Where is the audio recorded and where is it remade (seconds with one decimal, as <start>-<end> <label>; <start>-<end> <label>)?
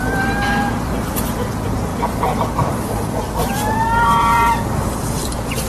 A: 0.0-1.9 recorded; 1.9-5.3 remade; 5.3-5.7 recorded